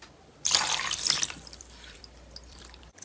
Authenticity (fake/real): fake